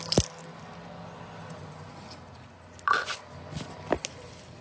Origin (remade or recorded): recorded